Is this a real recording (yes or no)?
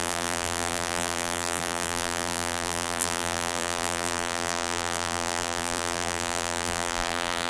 no